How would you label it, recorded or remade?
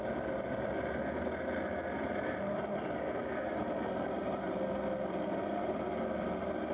recorded